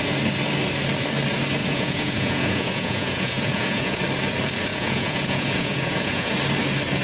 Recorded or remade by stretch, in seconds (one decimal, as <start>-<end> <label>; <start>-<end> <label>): 0.0-1.6 recorded; 1.6-4.0 remade; 4.0-4.7 recorded; 4.7-6.3 remade; 6.3-7.0 recorded